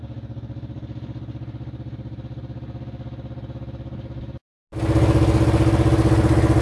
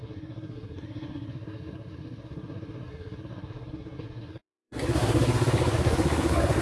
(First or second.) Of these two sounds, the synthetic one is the second